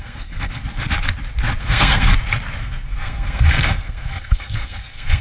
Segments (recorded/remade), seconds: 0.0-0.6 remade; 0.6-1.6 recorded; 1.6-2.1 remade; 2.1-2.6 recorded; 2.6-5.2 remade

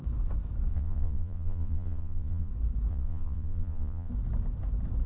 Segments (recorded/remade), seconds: 0.0-0.7 recorded; 0.7-2.5 remade; 2.5-2.9 recorded; 2.9-4.1 remade; 4.1-5.1 recorded

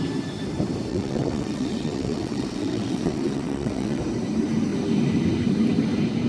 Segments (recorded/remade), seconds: 0.0-0.9 recorded; 0.9-4.0 remade; 4.0-6.3 recorded

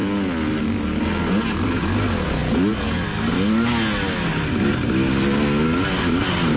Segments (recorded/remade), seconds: 0.0-6.6 recorded

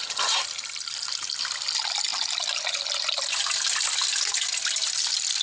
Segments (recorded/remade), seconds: 0.0-5.4 recorded

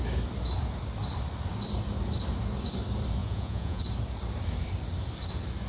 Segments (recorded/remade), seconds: 0.0-3.2 recorded; 3.2-3.8 remade; 3.8-5.7 recorded

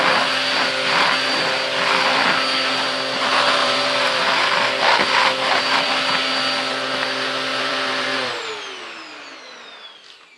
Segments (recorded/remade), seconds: 0.0-3.6 recorded; 3.6-5.9 remade; 5.9-7.5 recorded; 7.5-8.3 remade; 8.3-10.4 recorded

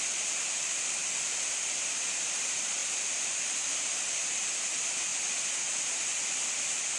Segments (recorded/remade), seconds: 0.0-1.0 remade; 1.0-1.9 recorded; 1.9-2.8 remade; 2.8-3.4 recorded; 3.4-5.1 remade; 5.1-5.6 recorded; 5.6-6.1 remade; 6.1-7.0 recorded